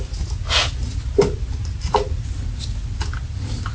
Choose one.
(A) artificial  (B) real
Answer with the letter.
B